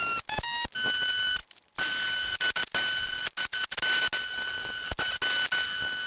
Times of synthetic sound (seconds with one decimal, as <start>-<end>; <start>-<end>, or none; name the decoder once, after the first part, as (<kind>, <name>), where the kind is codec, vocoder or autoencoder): none